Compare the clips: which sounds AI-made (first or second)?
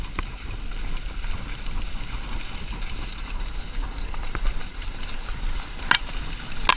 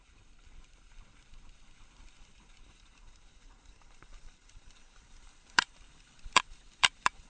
second